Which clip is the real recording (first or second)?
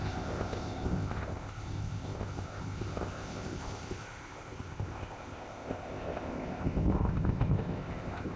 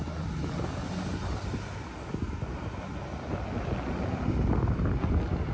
second